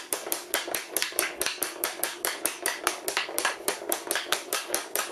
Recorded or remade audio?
remade